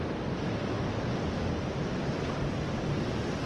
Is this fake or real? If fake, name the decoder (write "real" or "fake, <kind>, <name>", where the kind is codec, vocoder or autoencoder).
real